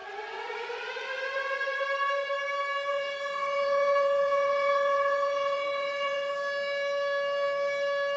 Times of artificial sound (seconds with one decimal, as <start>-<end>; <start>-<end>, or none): 0.0-0.9; 2.9-6.3